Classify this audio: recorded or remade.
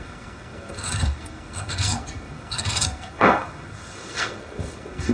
remade